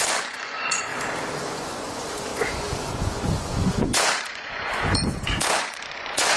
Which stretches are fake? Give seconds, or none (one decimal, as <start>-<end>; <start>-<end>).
0.0-0.9; 1.4-6.4